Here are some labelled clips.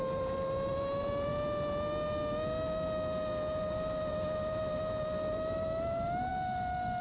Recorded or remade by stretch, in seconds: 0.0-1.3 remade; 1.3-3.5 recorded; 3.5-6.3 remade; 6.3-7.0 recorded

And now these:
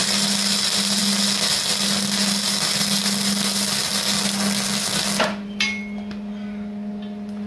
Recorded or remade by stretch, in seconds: 0.0-7.5 recorded

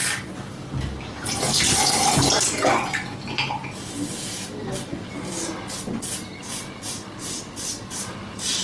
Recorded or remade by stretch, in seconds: 0.0-7.2 recorded; 7.2-8.6 remade

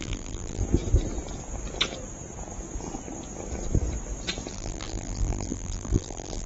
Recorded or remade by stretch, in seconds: 0.0-0.6 remade; 0.6-4.5 recorded; 4.5-6.5 remade

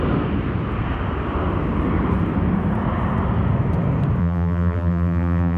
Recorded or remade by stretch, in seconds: 0.0-4.2 recorded; 4.2-5.6 remade

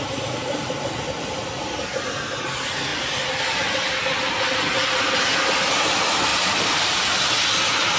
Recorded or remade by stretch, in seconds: 0.0-6.3 recorded; 6.3-6.9 remade; 6.9-8.0 recorded

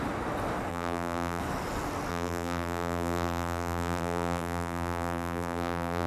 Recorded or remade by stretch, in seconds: 0.0-0.7 recorded; 0.7-1.4 remade; 1.4-2.1 recorded; 2.1-6.1 remade

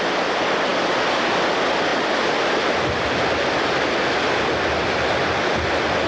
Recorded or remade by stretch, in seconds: 0.0-6.1 recorded